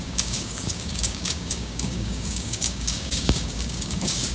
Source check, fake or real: fake